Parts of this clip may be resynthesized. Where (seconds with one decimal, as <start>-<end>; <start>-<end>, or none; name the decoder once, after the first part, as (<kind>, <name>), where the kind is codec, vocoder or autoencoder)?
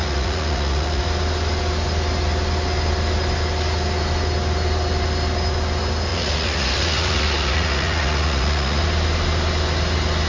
0.0-1.0 (vocoder, Vocos); 6.1-8.8